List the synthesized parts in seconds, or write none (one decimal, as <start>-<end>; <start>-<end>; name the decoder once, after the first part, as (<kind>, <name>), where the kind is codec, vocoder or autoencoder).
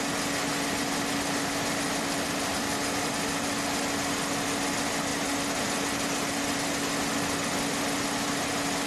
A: none